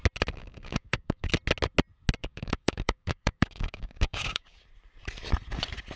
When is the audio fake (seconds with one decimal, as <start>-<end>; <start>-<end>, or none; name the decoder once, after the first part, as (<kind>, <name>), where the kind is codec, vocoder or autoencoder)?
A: 0.4-1.3 (codec, DAC); 2.2-4.6